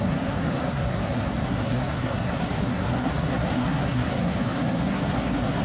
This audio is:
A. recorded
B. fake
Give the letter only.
B